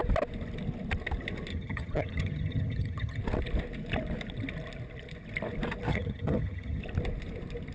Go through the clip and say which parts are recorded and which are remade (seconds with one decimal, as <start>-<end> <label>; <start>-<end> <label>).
0.0-1.5 recorded; 1.5-3.2 remade; 3.2-5.9 recorded; 5.9-6.8 remade; 6.8-7.7 recorded